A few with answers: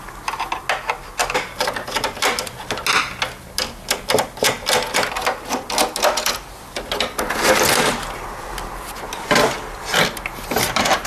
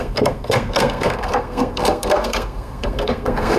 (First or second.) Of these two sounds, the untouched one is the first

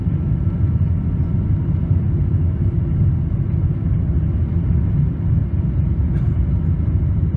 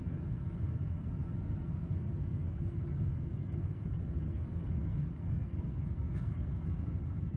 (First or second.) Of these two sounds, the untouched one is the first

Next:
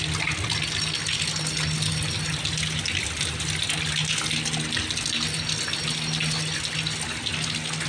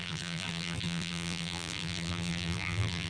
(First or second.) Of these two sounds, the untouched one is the first